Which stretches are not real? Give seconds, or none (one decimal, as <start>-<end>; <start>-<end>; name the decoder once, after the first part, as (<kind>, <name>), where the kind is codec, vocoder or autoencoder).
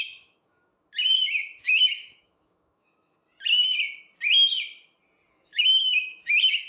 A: 0.0-0.7 (autoencoder, DAC-VAE); 1.6-3.2; 5.3-6.7